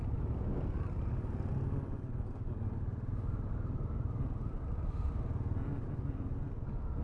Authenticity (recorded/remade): recorded